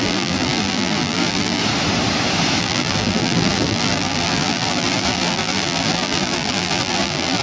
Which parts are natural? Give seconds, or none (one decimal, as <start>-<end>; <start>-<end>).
1.6-2.6